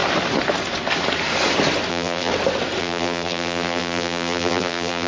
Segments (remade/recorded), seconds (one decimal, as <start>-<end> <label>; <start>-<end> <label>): 0.0-1.9 recorded; 1.9-2.3 remade; 2.3-2.8 recorded; 2.8-5.1 remade